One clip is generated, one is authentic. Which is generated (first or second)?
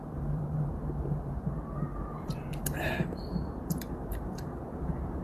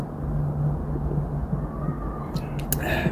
first